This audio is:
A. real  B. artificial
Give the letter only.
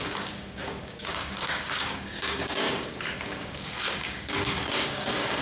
B